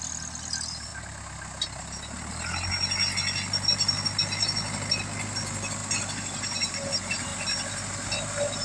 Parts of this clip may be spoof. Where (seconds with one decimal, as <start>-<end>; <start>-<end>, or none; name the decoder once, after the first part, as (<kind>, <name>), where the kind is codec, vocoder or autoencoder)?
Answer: none